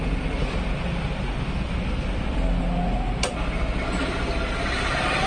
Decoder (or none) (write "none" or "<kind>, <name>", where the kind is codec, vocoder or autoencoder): none